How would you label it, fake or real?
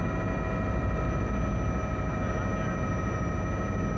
real